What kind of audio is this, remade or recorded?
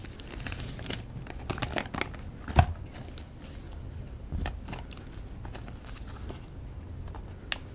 recorded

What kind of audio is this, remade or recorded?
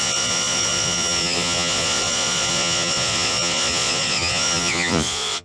remade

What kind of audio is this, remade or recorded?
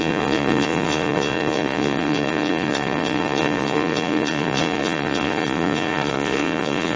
remade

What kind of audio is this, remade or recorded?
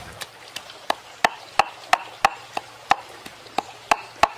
recorded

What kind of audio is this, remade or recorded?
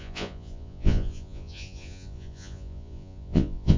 remade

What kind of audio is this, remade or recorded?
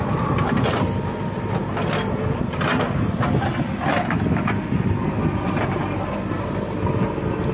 recorded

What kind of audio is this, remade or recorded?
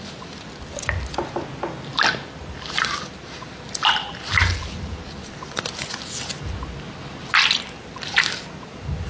recorded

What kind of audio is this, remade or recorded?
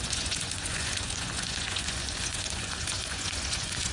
remade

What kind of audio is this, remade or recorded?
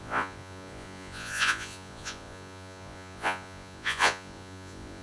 remade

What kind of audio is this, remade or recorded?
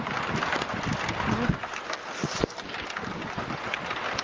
recorded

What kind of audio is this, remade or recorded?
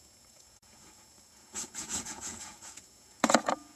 remade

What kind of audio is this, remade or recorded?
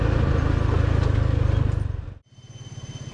recorded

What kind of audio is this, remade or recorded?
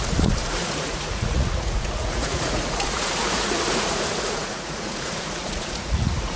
remade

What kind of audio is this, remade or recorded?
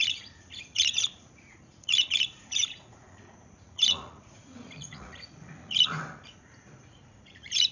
remade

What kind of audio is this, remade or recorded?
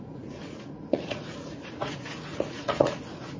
remade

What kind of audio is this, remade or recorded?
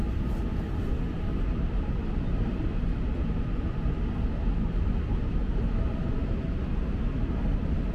recorded